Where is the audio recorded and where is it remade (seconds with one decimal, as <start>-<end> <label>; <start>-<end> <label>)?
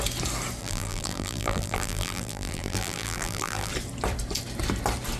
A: 0.0-0.6 recorded; 0.6-3.7 remade; 3.7-5.2 recorded